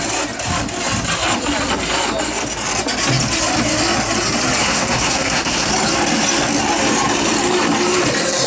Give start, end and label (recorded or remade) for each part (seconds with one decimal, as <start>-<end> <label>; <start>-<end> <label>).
0.0-4.6 recorded; 4.6-5.7 remade; 5.7-8.5 recorded